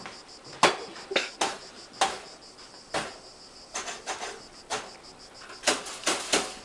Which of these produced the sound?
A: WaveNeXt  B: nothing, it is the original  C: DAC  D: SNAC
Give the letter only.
B